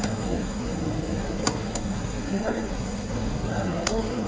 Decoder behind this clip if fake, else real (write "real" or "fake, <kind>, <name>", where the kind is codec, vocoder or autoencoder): fake, codec, SNAC